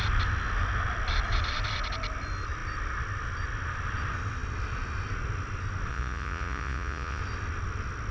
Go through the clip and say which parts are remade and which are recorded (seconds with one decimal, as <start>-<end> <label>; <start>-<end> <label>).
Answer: 0.0-5.9 recorded; 5.9-7.2 remade; 7.2-8.1 recorded